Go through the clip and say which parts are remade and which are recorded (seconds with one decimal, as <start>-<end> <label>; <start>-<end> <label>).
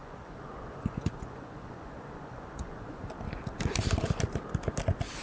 0.0-3.1 remade; 3.1-5.2 recorded